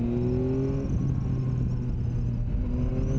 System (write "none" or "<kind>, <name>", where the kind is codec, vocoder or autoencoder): none